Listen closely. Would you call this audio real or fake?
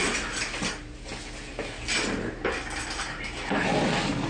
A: real